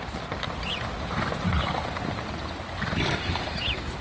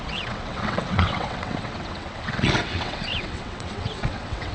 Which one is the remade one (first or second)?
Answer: second